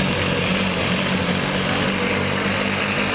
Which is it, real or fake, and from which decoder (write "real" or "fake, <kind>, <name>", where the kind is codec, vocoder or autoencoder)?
real